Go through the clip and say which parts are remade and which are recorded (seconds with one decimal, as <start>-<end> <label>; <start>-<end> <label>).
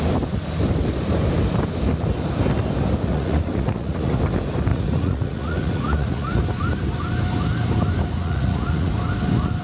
0.0-3.1 recorded; 3.1-4.2 remade; 4.2-4.7 recorded; 4.7-6.4 remade; 6.4-8.2 recorded; 8.2-8.9 remade; 8.9-9.6 recorded